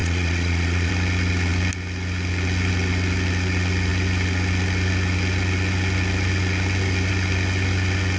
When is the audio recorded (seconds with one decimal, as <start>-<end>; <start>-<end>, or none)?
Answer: 0.9-8.2